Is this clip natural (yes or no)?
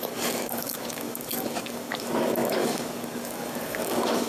no